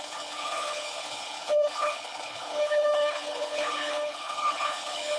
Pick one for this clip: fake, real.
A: fake